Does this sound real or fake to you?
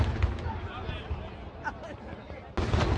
real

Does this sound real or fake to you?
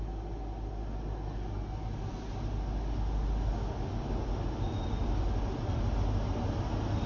real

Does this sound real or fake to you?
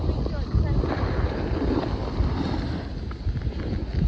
real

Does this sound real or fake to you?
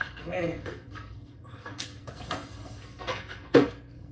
fake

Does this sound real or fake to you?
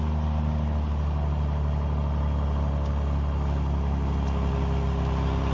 real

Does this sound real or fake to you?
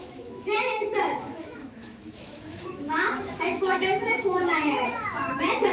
fake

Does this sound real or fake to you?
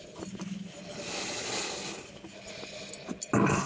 real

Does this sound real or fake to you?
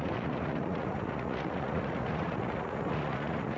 fake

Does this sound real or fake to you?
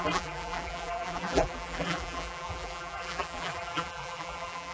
fake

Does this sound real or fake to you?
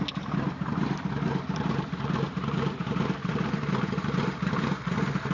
fake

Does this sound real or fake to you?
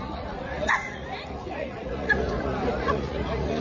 fake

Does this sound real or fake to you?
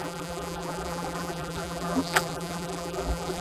fake